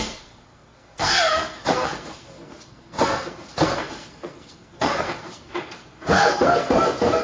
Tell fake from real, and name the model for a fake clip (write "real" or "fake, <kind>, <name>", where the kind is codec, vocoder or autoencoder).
fake, codec, SNAC